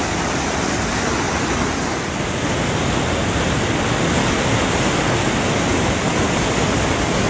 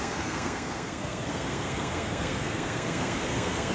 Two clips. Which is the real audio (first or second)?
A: first